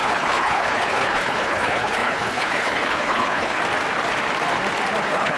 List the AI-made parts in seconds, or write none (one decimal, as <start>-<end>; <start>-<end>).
0.0-3.6; 5.0-5.4